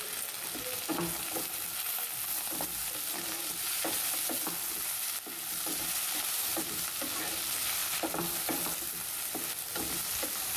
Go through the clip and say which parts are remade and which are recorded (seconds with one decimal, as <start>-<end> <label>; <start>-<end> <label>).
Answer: 0.0-10.6 recorded